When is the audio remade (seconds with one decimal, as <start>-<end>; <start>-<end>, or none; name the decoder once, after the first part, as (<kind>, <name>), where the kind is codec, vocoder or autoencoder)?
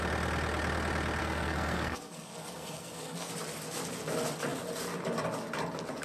1.2-3.3 (codec, SNAC)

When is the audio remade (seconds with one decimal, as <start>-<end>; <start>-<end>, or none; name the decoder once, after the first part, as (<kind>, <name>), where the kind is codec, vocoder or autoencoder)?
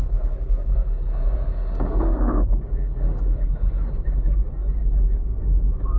0.0-4.5 (codec, SNAC); 5.2-6.0